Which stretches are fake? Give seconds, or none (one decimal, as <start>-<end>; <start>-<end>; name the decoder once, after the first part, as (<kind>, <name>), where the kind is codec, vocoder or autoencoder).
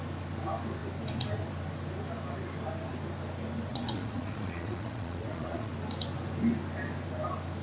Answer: 3.7-5.7 (vocoder, Vocos)